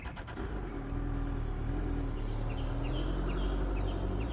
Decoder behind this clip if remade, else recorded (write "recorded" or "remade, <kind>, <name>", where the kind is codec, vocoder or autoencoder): recorded